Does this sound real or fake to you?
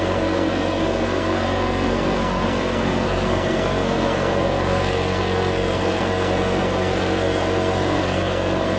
fake